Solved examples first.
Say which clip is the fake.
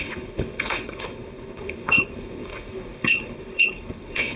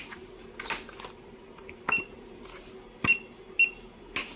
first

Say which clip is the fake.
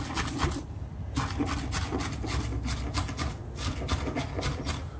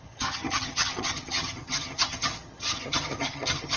second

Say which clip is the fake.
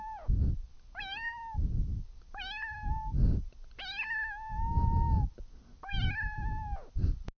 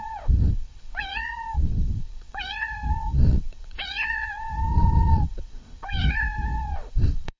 second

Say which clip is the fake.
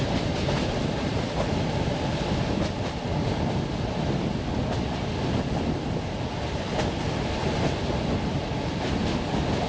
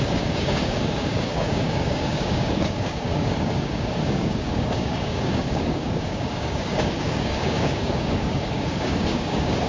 second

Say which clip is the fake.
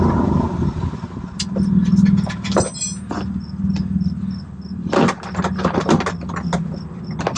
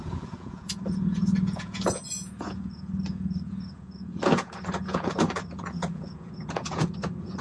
second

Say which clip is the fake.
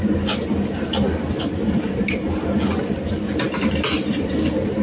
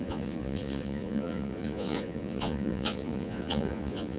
second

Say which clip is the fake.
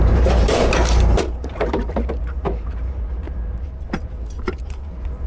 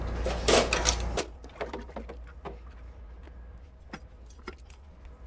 first